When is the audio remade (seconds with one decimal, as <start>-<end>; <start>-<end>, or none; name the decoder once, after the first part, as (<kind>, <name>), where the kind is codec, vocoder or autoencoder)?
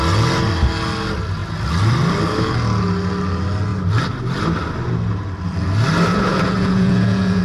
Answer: 6.1-7.4 (vocoder, Vocos)